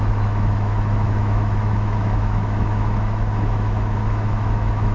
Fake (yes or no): yes